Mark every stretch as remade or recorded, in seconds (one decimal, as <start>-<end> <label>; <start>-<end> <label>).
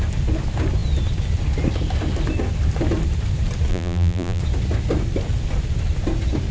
0.0-3.7 recorded; 3.7-4.4 remade; 4.4-6.5 recorded